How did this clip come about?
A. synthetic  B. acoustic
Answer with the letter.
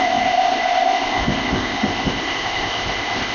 A